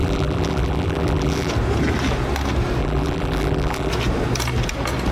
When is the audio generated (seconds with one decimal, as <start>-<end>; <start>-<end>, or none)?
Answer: 0.0-1.5; 2.8-3.9